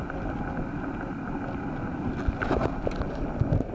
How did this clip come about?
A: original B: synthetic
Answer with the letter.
A